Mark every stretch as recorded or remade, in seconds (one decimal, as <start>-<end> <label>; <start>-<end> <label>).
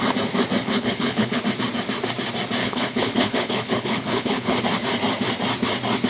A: 0.0-0.6 recorded; 0.6-1.4 remade; 1.4-2.6 recorded; 2.6-4.6 remade; 4.6-6.1 recorded